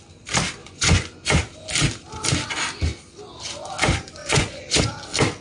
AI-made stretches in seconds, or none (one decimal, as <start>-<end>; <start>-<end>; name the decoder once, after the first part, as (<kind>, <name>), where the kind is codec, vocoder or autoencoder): 0.6-1.3 (vocoder, Vocos); 4.2-4.8